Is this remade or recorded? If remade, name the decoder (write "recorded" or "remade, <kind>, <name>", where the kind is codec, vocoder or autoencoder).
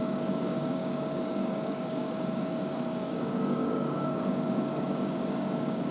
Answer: remade, codec, DAC